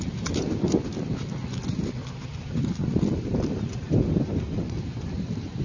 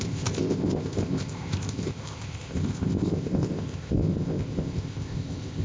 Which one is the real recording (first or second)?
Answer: first